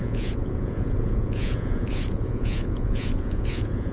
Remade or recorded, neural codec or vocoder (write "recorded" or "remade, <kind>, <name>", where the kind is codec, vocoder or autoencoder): remade, vocoder, Vocos